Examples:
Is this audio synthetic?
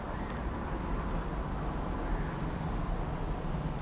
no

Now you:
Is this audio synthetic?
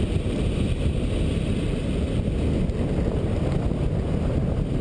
no